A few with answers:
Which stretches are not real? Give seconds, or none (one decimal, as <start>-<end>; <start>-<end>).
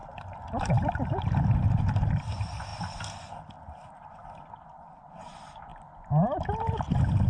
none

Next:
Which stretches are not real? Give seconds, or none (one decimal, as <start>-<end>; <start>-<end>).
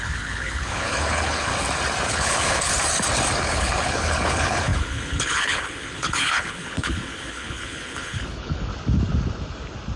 0.0-1.5; 2.1-2.7; 3.4-8.7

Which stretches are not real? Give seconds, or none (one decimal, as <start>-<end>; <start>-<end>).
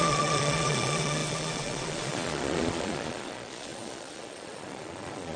0.0-5.4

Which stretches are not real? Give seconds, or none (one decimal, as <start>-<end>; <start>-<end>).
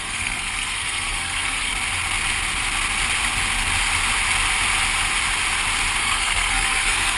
0.0-1.7; 6.0-7.2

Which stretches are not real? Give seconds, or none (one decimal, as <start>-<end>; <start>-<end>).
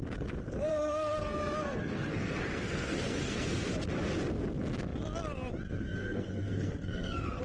0.7-3.7; 6.0-7.4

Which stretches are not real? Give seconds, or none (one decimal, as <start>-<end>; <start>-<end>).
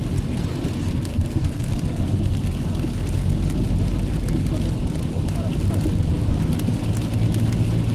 1.1-2.4